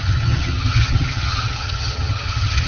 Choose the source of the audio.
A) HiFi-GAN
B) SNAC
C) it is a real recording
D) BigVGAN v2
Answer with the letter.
A